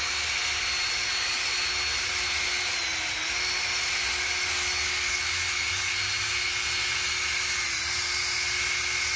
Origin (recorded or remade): recorded